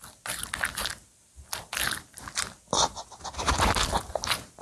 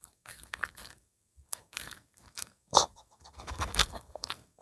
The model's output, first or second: second